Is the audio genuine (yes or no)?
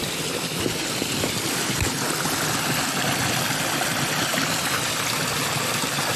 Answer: yes